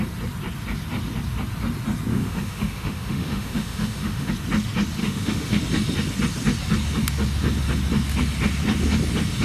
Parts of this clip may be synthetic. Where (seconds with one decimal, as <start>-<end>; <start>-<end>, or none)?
2.1-4.3; 5.0-5.6